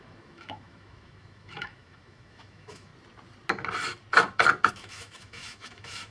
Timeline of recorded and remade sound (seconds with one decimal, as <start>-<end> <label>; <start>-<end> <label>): 0.0-2.9 remade; 2.9-4.7 recorded; 4.7-6.1 remade